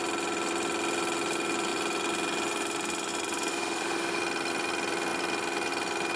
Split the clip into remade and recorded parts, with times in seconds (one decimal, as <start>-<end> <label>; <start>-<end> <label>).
0.0-3.5 recorded; 3.5-4.2 remade; 4.2-6.2 recorded

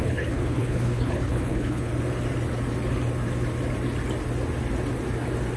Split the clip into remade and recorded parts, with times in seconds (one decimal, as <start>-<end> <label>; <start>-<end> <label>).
0.0-1.9 remade; 1.9-5.6 recorded